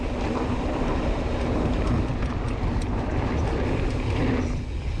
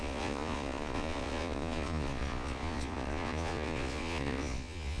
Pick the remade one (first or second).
second